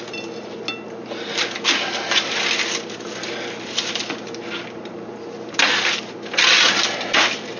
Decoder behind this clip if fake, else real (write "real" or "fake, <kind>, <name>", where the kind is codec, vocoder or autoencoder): real